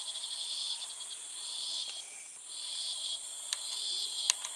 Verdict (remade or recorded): recorded